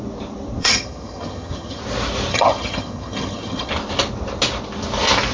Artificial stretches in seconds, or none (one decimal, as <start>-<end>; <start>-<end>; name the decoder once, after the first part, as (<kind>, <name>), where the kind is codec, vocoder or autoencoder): 0.6-1.8 (vocoder, HiFi-GAN); 2.3-3.7